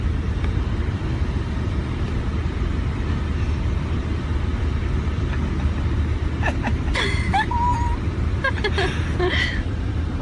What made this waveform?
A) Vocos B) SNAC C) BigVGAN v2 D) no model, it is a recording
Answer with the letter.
D